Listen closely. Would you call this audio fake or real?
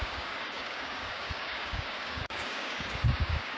fake